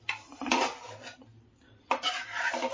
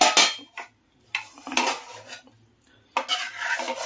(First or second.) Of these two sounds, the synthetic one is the first